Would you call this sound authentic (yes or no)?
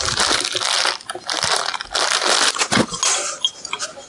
yes